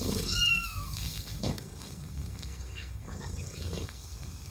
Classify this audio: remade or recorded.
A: remade